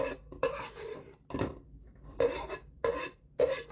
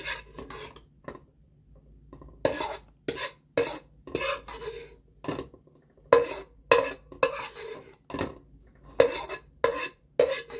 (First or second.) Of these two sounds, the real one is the second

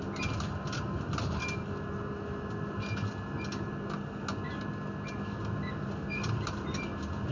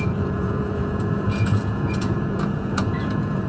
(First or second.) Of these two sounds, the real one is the first